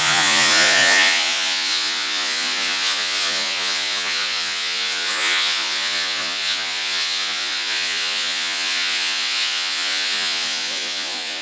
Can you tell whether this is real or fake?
fake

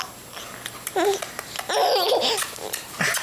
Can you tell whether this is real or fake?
real